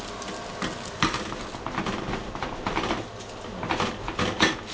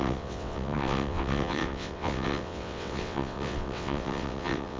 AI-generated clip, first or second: second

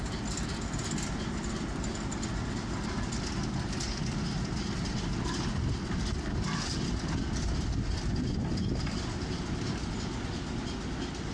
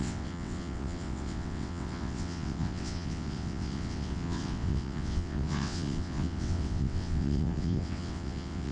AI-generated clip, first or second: second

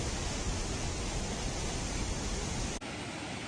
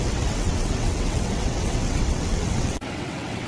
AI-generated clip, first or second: second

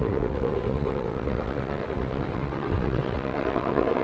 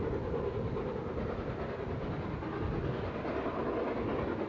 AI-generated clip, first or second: first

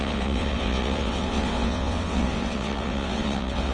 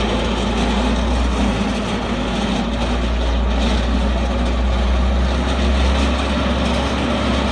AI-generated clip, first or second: first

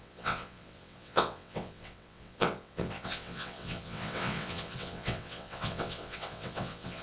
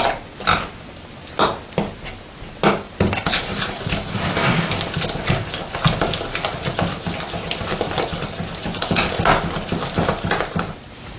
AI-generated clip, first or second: first